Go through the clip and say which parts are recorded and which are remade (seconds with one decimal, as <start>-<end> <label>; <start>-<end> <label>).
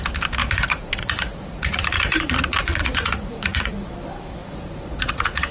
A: 0.0-0.4 recorded; 0.4-3.7 remade; 3.7-4.4 recorded; 4.4-5.5 remade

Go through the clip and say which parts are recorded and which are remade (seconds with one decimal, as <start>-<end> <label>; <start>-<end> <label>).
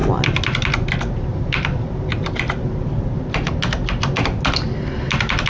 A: 0.0-5.5 recorded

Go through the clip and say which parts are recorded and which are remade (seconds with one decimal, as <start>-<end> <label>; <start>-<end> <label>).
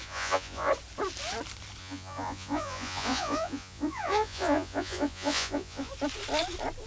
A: 0.0-0.7 remade; 0.7-1.8 recorded; 1.8-5.9 remade; 5.9-6.9 recorded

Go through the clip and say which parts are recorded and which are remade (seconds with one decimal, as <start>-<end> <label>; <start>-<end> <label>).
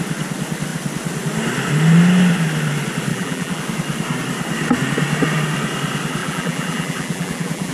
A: 0.0-3.1 recorded; 3.1-3.6 remade; 3.6-6.2 recorded; 6.2-7.7 remade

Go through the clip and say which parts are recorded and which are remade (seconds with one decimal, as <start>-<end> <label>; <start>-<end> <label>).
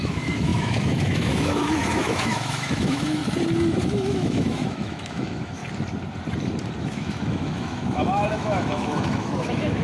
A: 0.0-3.2 remade; 3.2-3.8 recorded; 3.8-5.6 remade; 5.6-6.8 recorded; 6.8-9.8 remade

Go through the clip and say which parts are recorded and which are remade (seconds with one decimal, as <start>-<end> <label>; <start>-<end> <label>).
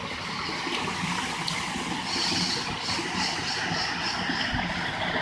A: 0.0-5.2 recorded